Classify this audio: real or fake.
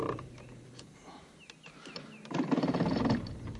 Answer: fake